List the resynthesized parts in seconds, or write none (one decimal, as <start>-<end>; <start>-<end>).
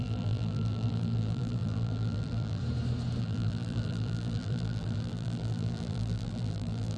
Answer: 0.0-2.6; 3.2-7.0